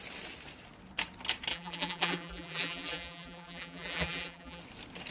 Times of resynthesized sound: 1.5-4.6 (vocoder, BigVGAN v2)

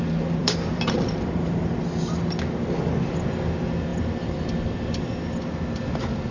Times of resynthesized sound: 0.4-1.8 (vocoder, BigVGAN v2)

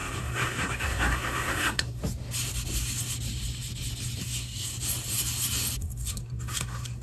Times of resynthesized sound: 0.0-2.0 (codec, SNAC); 4.2-4.7; 5.8-7.0

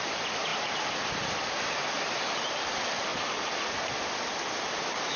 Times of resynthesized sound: none

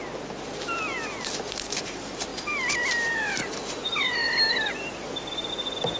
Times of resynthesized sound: 0.0-6.0 (vocoder, BigVGAN v2)